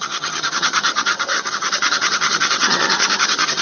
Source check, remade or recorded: remade